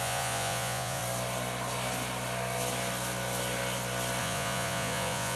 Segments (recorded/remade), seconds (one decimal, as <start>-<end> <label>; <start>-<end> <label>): 0.0-1.0 remade; 1.0-4.2 recorded; 4.2-5.4 remade